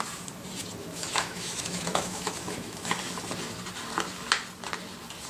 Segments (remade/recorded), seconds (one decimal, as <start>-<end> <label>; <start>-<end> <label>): 0.0-0.8 recorded; 0.8-3.0 remade; 3.0-5.3 recorded